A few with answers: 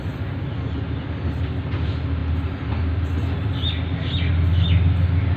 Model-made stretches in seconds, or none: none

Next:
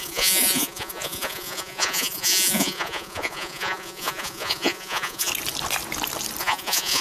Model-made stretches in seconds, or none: 0.0-5.3 (vocoder, Vocos); 6.4-7.0

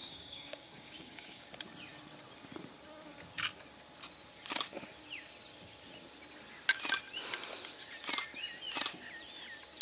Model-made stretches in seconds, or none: 0.0-1.5 (codec, DAC)

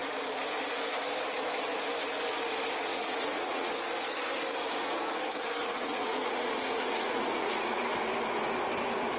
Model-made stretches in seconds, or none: 2.9-3.7 (vocoder, Vocos); 5.6-7.8

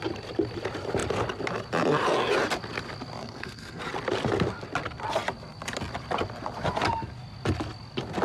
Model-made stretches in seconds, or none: 3.2-3.8 (codec, SNAC)

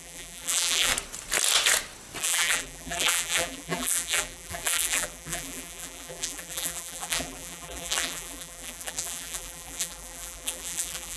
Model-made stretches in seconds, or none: 0.0-0.9 (vocoder, BigVGAN v2); 2.2-11.2

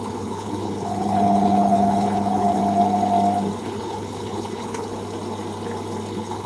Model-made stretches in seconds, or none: 0.0-2.6 (codec, HILCodec); 3.6-4.9; 6.1-6.5